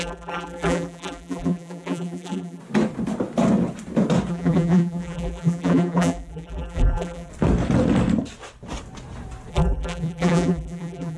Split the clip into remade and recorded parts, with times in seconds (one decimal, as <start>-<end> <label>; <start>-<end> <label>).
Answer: 0.0-2.6 remade; 2.6-4.3 recorded; 4.3-7.3 remade; 7.3-9.5 recorded; 9.5-11.2 remade